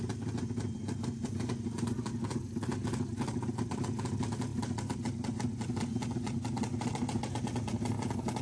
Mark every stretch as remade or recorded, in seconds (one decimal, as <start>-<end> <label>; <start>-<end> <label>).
0.0-8.4 recorded